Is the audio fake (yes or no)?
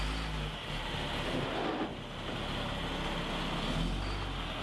no